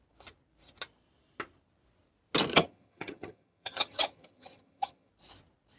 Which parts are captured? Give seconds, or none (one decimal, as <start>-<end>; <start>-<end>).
0.0-2.5; 5.1-5.8